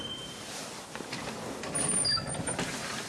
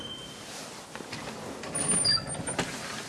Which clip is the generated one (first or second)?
first